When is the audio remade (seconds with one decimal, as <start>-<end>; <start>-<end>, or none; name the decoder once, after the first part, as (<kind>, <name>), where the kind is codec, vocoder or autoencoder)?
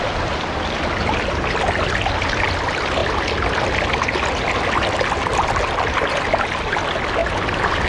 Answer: none